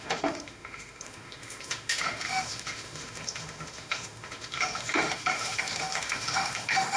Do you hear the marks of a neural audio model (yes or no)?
yes